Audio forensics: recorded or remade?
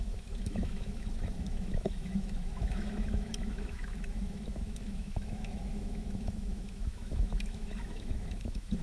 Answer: remade